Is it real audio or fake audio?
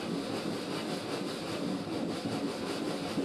real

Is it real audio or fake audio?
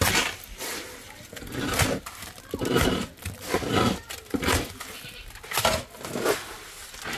real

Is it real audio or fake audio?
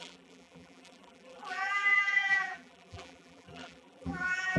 fake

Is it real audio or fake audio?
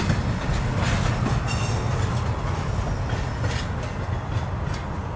real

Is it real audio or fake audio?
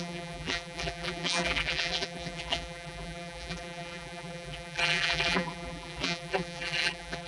fake